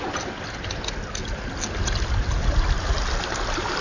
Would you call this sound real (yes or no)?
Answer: yes